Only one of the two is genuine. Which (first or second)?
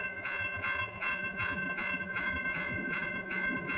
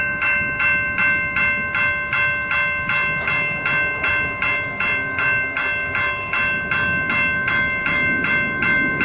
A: second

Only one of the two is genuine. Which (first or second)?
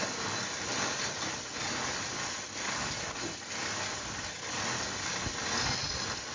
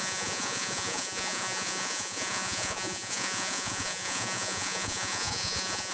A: first